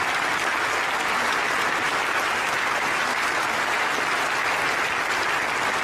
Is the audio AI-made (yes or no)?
no